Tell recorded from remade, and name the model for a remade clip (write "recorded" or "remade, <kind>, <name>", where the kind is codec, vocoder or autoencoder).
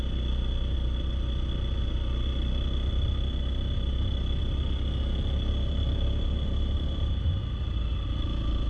recorded